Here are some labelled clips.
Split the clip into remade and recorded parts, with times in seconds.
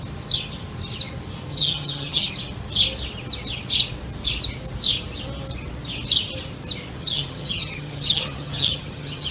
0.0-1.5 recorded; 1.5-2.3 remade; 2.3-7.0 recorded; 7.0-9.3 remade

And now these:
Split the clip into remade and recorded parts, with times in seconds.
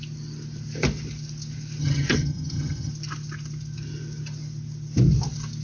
0.0-1.8 recorded; 1.8-2.9 remade; 2.9-5.6 recorded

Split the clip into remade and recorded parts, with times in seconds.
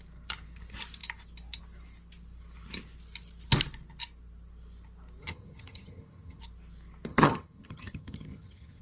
0.0-5.2 recorded; 5.2-6.4 remade; 6.4-7.1 recorded; 7.1-8.8 remade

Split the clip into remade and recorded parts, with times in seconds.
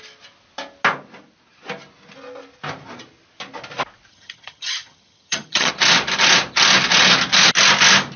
0.0-4.1 recorded; 4.1-5.7 remade; 5.7-8.2 recorded